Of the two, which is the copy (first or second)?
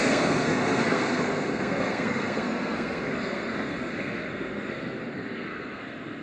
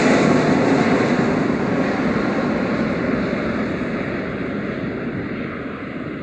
first